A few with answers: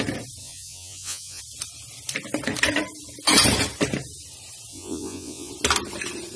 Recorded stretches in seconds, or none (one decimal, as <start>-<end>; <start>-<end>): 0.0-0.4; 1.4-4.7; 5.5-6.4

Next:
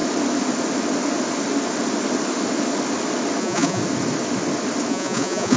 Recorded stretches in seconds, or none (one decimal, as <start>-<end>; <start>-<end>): 0.0-3.4; 3.8-4.9

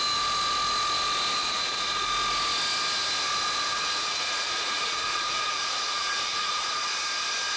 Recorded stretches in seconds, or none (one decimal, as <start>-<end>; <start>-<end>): 0.0-1.4; 2.1-3.7; 6.7-7.6